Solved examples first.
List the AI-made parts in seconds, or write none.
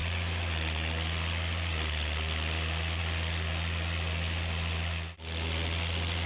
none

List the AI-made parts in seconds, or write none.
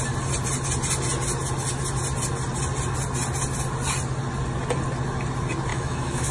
5.7-6.3 (autoencoder, DAC-VAE)